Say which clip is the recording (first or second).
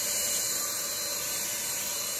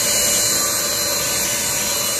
second